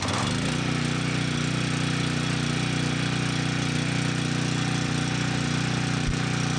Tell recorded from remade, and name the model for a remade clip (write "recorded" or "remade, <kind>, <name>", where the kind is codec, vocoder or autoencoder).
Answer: recorded